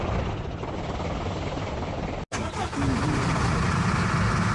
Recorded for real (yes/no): yes